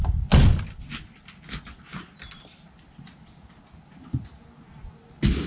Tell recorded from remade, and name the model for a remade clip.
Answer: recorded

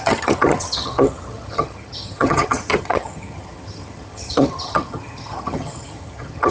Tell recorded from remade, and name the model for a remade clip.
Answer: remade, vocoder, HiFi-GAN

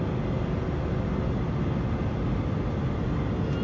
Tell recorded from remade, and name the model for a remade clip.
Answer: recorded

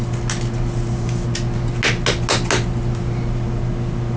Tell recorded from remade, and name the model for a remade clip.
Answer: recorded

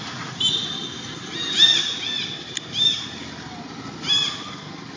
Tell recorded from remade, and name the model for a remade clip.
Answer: recorded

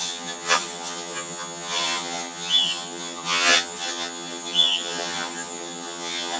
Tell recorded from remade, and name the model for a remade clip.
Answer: remade, vocoder, HiFi-GAN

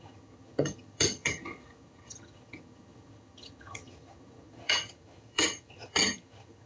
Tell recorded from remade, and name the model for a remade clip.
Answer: remade, vocoder, HiFi-GAN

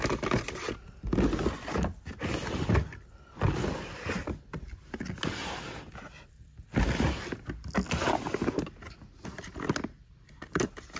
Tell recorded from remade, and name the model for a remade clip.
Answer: recorded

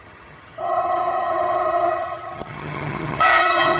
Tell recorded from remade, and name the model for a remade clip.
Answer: remade, vocoder, HiFi-GAN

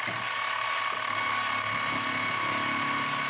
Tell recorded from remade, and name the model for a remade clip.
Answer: recorded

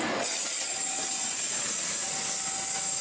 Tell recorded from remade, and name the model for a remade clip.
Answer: recorded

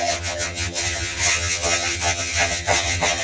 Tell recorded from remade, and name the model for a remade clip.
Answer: remade, vocoder, HiFi-GAN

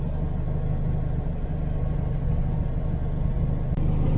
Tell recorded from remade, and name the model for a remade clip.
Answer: recorded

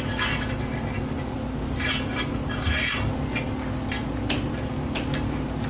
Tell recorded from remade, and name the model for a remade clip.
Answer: recorded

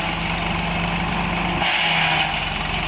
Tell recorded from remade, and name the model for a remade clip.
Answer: recorded